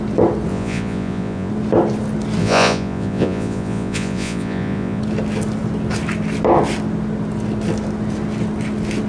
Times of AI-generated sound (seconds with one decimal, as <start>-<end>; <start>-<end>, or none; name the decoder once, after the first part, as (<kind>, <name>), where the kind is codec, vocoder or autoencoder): 0.5-1.5 (vocoder, Vocos); 2.4-5.0